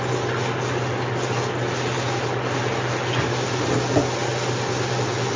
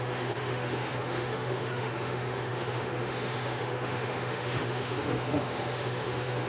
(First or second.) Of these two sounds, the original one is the first